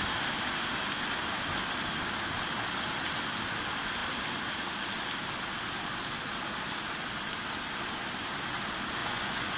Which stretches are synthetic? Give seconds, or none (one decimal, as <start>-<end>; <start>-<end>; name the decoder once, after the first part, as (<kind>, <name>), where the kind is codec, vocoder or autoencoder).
9.0-9.6 (vocoder, Vocos)